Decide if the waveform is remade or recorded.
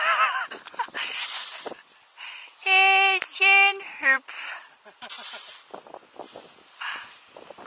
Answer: recorded